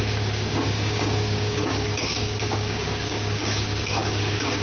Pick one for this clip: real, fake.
fake